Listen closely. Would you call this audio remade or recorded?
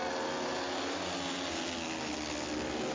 recorded